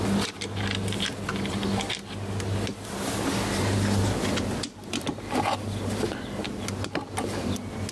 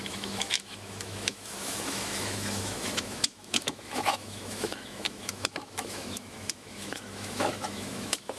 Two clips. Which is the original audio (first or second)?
first